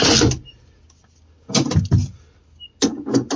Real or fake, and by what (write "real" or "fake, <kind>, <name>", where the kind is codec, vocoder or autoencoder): real